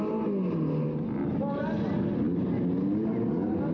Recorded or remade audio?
recorded